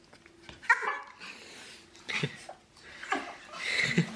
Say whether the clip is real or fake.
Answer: real